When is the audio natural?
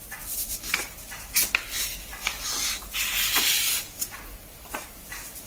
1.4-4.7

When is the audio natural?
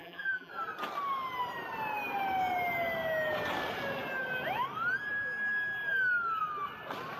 0.5-7.2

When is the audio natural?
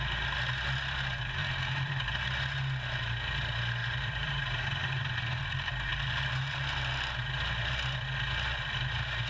0.0-1.4; 1.9-3.8; 5.4-9.3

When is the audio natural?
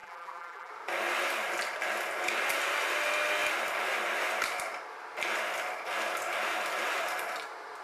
0.7-7.8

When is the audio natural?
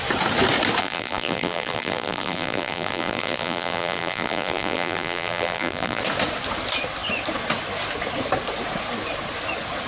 0.0-0.8; 6.0-9.9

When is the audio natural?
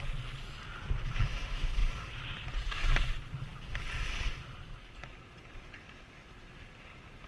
0.0-1.8; 3.0-3.5; 5.1-7.3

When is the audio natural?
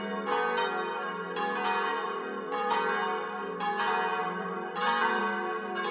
0.0-1.9; 3.0-4.2; 5.2-5.9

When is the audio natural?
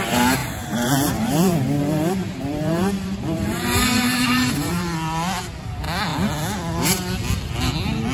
0.0-0.4; 4.7-8.1